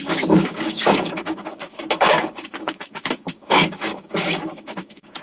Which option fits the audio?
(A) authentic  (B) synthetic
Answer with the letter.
B